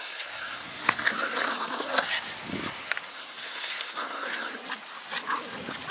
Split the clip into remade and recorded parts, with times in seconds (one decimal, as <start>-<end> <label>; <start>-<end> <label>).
0.0-2.1 remade; 2.1-3.1 recorded; 3.1-4.5 remade; 4.5-5.9 recorded